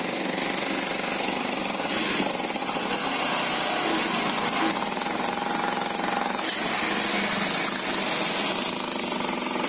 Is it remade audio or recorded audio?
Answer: recorded